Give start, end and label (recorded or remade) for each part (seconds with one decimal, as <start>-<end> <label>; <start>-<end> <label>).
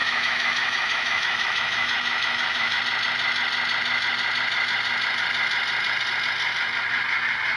0.0-2.8 remade; 2.8-7.6 recorded